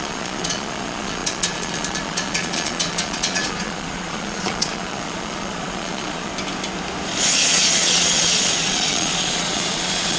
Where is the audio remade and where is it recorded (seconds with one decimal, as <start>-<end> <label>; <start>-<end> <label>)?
0.0-6.3 remade; 6.3-7.2 recorded; 7.2-10.2 remade